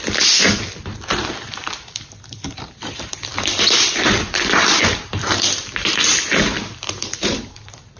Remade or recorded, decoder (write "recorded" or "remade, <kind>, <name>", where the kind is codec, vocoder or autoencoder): remade, vocoder, BigVGAN v2